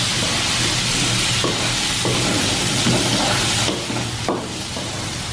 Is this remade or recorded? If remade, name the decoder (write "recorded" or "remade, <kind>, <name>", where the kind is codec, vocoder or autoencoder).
recorded